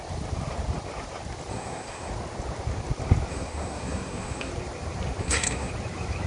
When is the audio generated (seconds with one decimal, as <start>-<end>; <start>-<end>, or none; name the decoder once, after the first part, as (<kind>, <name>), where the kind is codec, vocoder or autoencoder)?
1.5-2.1 (codec, SNAC); 3.3-4.5; 5.2-5.7